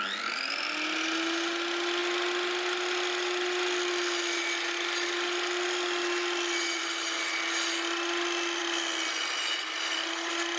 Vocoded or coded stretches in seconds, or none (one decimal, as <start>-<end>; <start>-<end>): none

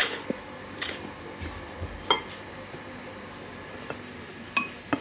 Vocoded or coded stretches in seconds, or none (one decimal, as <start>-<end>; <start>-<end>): none

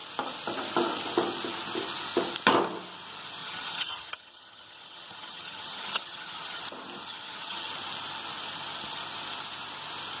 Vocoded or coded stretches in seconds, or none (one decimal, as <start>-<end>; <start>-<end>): 3.4-6.6; 7.1-7.7